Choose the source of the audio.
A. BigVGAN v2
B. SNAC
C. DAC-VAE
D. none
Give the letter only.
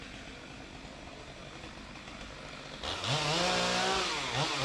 D